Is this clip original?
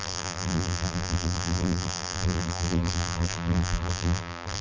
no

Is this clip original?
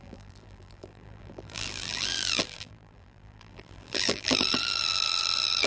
no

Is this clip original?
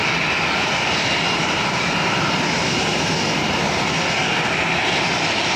yes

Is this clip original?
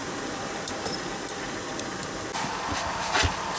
yes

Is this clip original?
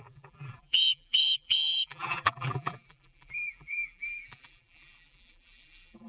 no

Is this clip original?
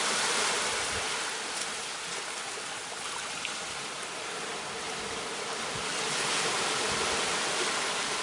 no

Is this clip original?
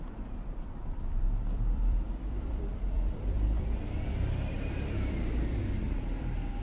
no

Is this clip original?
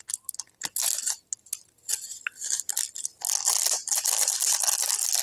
yes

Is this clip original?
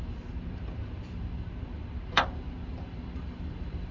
no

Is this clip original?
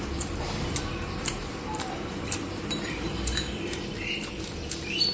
no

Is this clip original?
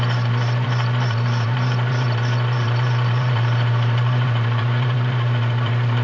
no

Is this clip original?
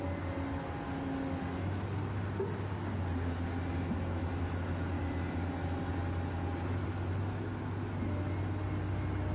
yes